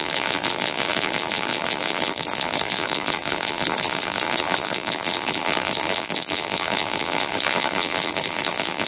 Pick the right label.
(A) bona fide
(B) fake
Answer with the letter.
B